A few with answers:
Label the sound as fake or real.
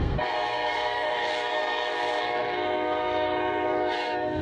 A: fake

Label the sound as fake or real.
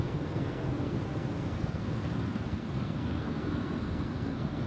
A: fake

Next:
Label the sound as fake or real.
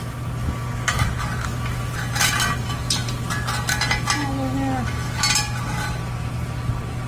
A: real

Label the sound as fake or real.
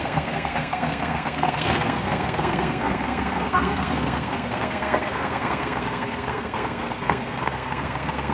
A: fake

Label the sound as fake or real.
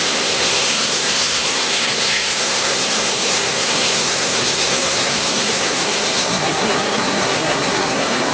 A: fake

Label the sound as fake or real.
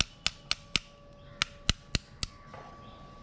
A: real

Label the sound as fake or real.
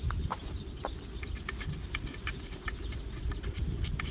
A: real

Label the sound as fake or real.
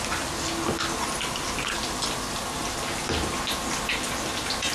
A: real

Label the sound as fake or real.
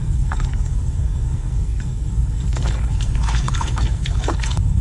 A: fake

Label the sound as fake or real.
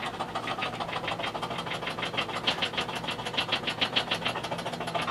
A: real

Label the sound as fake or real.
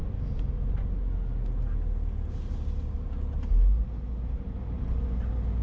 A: real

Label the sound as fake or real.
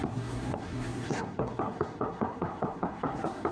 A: fake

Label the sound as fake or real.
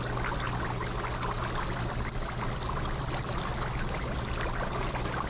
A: real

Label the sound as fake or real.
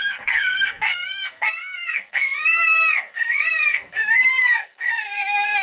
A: fake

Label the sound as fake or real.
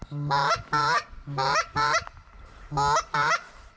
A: real